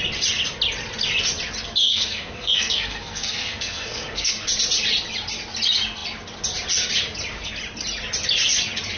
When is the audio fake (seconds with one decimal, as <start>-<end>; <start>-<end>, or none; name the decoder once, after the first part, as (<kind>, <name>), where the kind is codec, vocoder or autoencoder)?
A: 1.8-4.3 (codec, SNAC)